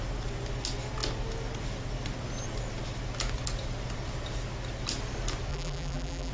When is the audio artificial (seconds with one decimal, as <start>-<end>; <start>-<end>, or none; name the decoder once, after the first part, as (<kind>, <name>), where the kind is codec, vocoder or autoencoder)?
5.5-6.3 (vocoder, BigVGAN v2)